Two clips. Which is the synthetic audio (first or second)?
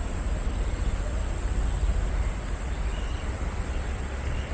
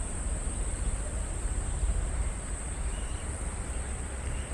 second